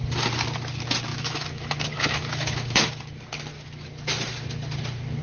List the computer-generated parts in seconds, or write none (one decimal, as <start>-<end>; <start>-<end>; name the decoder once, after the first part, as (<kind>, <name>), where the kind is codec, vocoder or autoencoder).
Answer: 1.1-3.1 (autoencoder, DAC-VAE)